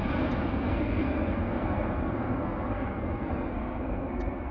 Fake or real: fake